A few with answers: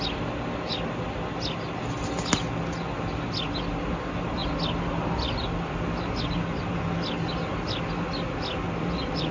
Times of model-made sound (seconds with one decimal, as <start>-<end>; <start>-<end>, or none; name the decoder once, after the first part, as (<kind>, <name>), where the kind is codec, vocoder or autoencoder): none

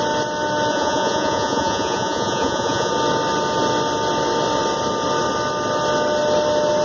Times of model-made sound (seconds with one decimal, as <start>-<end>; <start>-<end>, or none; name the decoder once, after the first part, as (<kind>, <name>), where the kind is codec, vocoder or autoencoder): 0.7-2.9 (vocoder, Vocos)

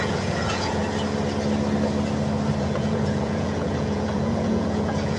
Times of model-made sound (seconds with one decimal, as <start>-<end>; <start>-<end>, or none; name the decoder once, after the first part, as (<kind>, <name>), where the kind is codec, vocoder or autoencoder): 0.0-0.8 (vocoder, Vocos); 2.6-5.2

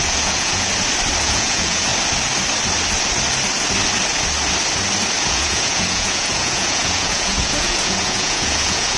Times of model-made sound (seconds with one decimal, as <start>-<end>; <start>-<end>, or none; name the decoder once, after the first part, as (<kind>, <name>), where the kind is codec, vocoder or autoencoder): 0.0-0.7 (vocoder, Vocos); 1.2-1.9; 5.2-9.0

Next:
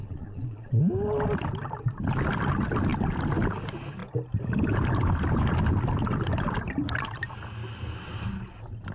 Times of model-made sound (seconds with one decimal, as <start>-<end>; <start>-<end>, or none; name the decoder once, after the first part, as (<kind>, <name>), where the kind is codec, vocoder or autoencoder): 0.0-0.8 (vocoder, Vocos)

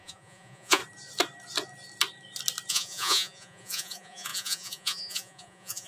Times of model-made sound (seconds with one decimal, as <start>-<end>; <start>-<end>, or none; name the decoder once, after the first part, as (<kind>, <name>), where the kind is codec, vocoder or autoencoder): 0.0-0.8 (vocoder, Vocos); 2.7-5.9

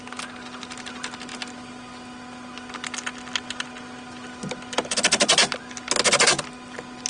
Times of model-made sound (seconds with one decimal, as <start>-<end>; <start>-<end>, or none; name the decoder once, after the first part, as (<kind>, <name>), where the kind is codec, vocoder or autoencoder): none

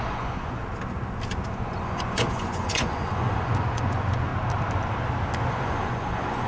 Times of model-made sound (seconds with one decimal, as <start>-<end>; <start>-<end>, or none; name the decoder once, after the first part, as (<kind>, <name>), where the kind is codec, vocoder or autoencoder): 0.0-0.6 (vocoder, Vocos); 1.5-4.3; 5.5-6.5